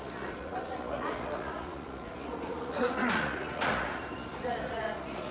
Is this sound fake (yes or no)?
yes